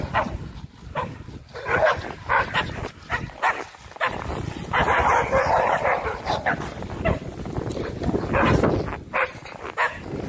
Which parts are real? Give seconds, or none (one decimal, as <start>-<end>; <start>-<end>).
0.0-10.3